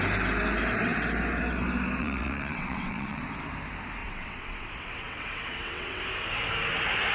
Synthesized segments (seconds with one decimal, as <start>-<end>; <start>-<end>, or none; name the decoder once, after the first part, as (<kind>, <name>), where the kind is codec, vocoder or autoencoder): 2.0-3.2 (vocoder, WaveNeXt); 4.0-6.0